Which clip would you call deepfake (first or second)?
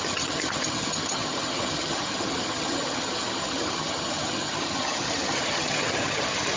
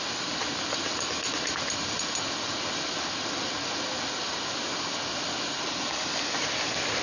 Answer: first